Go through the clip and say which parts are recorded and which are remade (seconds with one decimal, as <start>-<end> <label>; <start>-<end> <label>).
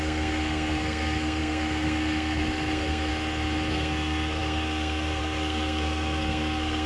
0.0-3.1 remade; 3.1-3.7 recorded; 3.7-6.9 remade